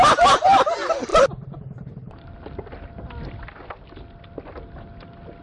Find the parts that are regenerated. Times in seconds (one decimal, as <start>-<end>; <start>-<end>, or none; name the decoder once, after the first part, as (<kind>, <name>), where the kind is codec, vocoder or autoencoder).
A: 1.1-2.6 (vocoder, BigVGAN v2)